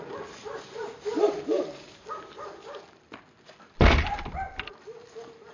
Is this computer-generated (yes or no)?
no